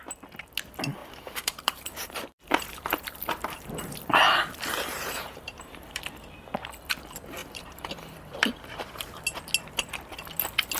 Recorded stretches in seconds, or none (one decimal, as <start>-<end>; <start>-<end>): 0.0-1.0; 6.0-7.4; 9.2-10.8